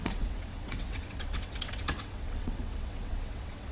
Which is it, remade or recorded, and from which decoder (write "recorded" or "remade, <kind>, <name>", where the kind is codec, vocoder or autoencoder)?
remade, vocoder, WaveNeXt